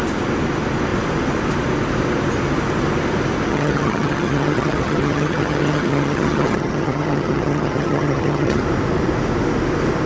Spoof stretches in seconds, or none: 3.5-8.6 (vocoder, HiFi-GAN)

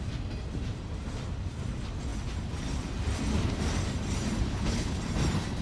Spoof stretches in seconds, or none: 4.5-5.0 (codec, HILCodec)

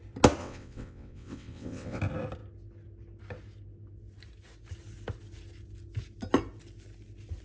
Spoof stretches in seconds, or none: 0.4-2.0 (vocoder, WaveNeXt)

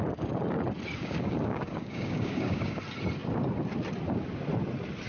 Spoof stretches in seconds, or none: 1.0-2.8 (codec, DAC)

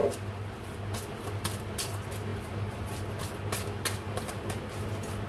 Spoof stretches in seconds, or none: 2.3-3.1 (vocoder, BigVGAN v2)